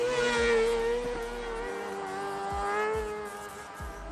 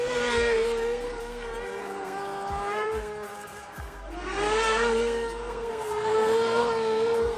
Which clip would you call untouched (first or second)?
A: first